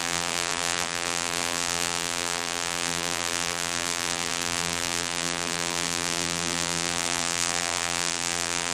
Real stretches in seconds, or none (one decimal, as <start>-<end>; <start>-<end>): none